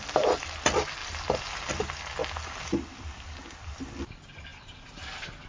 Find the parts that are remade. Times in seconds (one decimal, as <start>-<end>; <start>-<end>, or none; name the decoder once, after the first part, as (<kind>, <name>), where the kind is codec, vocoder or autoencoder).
none